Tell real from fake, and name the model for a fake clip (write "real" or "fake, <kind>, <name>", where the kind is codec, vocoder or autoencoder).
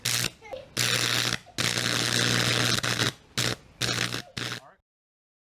real